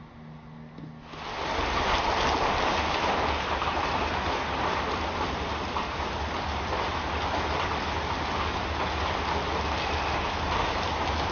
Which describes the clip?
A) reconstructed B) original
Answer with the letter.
B